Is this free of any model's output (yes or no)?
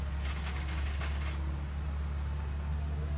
yes